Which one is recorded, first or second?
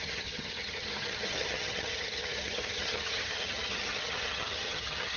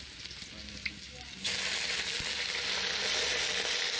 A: second